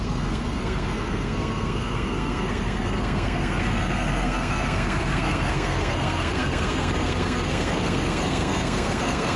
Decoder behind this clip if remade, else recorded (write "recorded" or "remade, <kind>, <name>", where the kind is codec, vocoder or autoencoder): remade, codec, SNAC